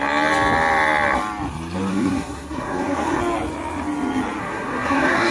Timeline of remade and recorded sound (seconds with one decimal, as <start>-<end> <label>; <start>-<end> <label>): 0.0-1.9 recorded; 1.9-3.2 remade; 3.2-4.4 recorded; 4.4-5.3 remade